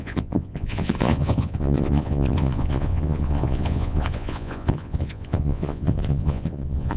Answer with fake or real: fake